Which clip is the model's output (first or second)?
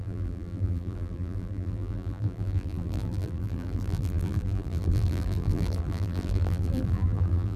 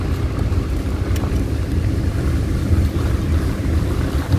first